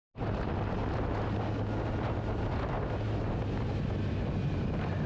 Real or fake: real